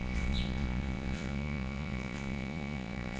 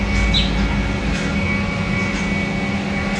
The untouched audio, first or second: second